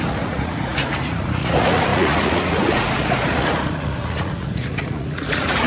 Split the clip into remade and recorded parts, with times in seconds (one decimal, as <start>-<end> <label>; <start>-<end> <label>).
0.0-5.7 remade